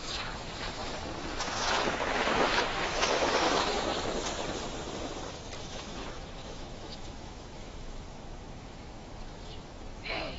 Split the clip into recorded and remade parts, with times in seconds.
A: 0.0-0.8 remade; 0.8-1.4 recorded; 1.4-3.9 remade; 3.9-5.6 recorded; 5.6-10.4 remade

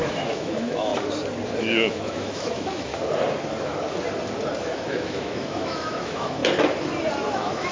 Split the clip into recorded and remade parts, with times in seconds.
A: 0.0-0.9 remade; 0.9-1.6 recorded; 1.6-2.9 remade; 2.9-4.6 recorded; 4.6-6.4 remade; 6.4-7.3 recorded; 7.3-7.7 remade

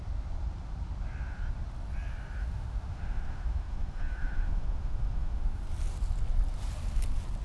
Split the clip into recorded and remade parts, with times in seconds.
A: 0.0-2.4 recorded; 2.4-5.6 remade; 5.6-7.4 recorded

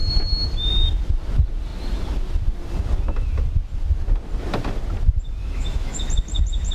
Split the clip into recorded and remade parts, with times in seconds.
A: 0.0-5.4 recorded; 5.4-6.1 remade; 6.1-6.7 recorded

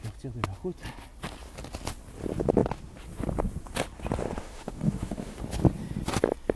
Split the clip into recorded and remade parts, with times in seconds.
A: 0.0-4.4 recorded; 4.4-5.4 remade; 5.4-6.6 recorded